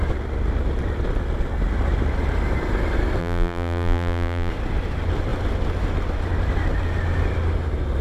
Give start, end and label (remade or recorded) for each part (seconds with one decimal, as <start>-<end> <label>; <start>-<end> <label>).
0.0-3.2 recorded; 3.2-4.5 remade; 4.5-8.0 recorded